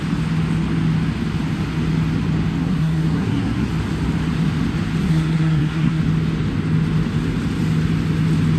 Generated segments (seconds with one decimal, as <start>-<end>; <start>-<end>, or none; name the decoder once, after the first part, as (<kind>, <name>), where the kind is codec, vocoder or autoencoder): 2.6-3.7 (codec, SNAC); 5.0-6.0

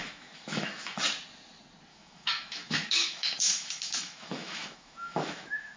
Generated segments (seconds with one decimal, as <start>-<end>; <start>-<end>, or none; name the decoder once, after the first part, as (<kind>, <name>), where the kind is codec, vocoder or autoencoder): 0.0-1.0 (autoencoder, DAC-VAE); 1.9-5.8

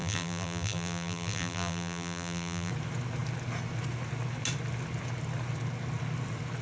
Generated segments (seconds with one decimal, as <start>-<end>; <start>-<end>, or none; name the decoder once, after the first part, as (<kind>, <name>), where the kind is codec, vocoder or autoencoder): 0.0-2.7 (vocoder, BigVGAN v2)

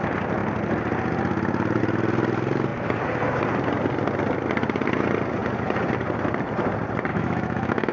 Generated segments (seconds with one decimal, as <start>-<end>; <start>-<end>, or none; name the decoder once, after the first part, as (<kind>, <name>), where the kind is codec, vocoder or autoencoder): 7.1-7.9 (autoencoder, DAC-VAE)

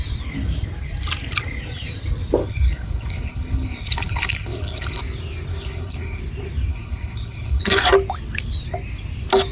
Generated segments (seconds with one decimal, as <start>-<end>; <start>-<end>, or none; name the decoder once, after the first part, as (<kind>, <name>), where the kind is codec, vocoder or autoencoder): 2.4-5.0 (codec, HILCodec); 5.5-6.2; 6.7-7.8

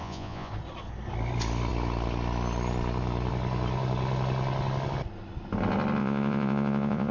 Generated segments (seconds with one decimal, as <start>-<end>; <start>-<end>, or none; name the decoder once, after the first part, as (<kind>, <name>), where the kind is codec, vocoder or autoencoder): 0.0-0.5 (vocoder, Vocos); 6.0-7.1

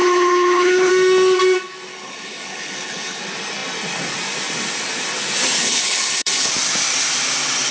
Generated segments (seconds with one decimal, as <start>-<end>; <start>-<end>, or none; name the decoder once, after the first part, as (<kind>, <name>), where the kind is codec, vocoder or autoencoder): 0.0-0.9 (codec, HILCodec); 1.9-3.2; 5.6-6.5

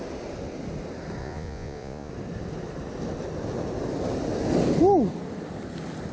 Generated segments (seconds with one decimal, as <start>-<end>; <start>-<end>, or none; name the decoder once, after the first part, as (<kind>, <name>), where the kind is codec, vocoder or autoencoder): 1.2-2.1 (vocoder, Vocos)